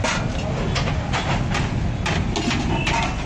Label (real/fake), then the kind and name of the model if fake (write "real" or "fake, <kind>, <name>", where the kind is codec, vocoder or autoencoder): real